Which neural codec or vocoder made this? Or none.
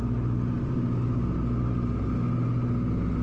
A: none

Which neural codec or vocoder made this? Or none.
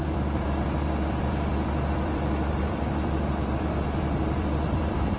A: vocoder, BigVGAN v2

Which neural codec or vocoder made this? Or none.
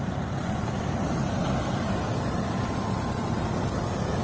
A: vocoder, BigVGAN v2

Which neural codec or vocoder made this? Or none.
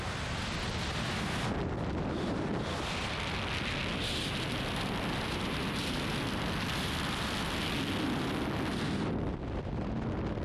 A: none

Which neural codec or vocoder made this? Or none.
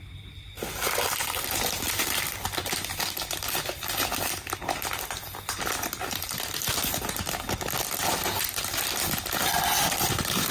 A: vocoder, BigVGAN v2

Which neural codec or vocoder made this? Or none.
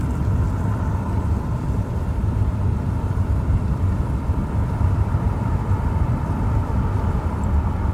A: vocoder, BigVGAN v2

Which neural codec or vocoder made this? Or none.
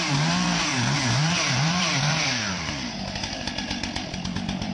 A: vocoder, BigVGAN v2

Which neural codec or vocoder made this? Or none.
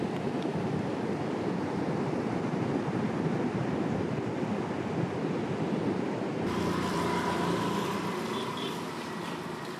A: vocoder, BigVGAN v2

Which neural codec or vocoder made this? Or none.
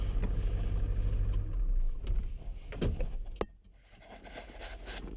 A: none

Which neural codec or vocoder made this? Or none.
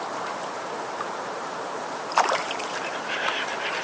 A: vocoder, BigVGAN v2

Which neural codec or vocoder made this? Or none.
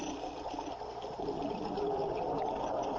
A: none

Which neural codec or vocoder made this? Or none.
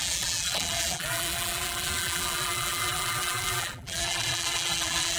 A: vocoder, BigVGAN v2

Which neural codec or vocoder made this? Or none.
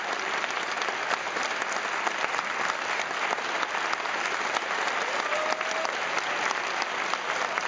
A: none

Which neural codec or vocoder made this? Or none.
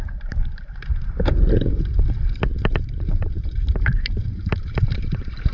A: vocoder, BigVGAN v2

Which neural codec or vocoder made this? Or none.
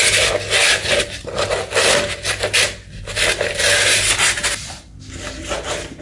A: none